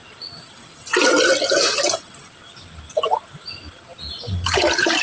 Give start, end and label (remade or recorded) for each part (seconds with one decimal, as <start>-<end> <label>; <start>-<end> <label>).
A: 0.0-5.0 recorded